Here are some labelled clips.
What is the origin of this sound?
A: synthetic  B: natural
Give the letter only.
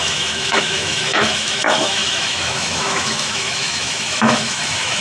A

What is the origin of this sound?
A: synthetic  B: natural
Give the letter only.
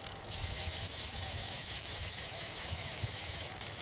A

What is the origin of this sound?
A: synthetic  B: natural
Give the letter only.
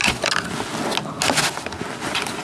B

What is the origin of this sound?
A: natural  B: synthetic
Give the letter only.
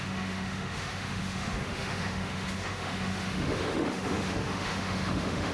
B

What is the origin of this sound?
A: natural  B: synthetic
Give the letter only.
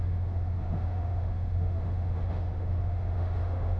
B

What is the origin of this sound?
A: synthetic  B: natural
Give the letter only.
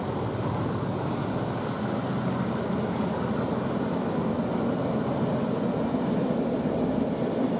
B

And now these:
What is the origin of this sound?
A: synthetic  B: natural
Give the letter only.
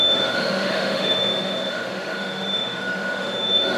A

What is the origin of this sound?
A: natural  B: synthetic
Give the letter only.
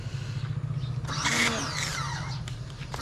A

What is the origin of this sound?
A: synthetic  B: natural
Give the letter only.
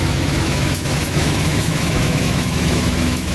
A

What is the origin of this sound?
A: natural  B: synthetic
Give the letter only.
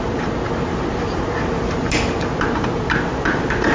A